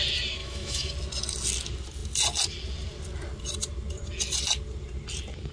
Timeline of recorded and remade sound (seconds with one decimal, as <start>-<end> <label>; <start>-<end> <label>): 0.0-0.4 recorded; 0.4-0.9 remade; 0.9-5.5 recorded